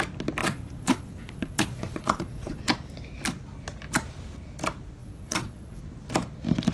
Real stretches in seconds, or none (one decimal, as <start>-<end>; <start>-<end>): 0.0-0.4; 2.6-5.0; 5.8-6.7